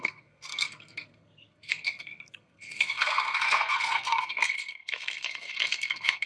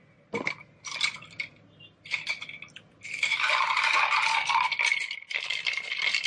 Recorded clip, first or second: second